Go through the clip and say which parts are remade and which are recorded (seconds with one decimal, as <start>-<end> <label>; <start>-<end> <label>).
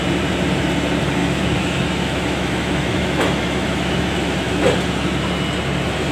0.0-1.2 recorded; 1.2-4.6 remade; 4.6-6.1 recorded